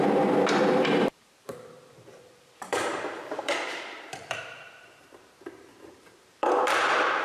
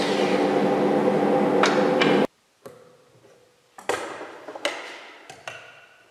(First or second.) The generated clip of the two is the first